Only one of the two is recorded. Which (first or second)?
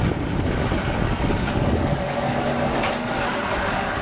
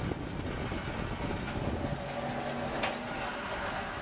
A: second